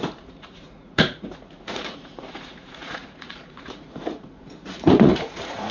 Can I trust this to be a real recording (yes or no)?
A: no